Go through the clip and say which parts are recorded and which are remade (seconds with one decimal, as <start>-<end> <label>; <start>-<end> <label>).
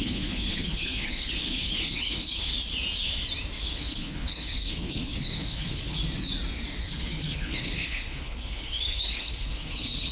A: 0.0-2.5 remade; 2.5-3.6 recorded; 3.6-6.0 remade; 6.0-6.8 recorded; 6.8-10.1 remade